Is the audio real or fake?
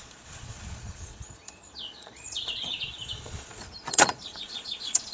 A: fake